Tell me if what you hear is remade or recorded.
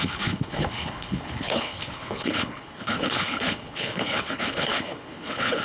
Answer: remade